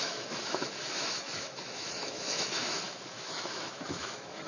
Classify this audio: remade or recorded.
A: remade